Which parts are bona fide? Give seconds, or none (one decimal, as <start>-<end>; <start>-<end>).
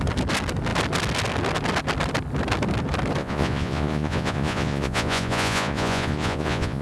0.0-3.2